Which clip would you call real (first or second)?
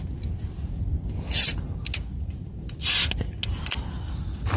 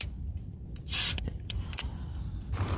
first